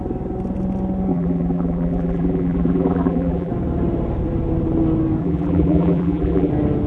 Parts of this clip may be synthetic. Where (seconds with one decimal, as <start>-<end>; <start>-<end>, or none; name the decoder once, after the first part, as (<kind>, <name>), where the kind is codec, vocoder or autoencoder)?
1.1-3.5 (vocoder, BigVGAN v2); 5.2-6.5

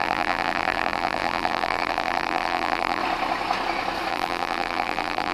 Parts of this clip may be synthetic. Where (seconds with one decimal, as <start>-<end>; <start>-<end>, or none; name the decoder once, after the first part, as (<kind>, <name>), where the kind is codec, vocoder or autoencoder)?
0.0-3.0 (vocoder, BigVGAN v2); 4.1-5.3

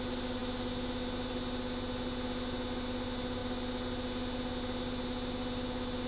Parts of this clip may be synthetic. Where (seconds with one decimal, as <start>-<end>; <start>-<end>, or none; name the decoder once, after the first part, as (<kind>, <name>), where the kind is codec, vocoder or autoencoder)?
none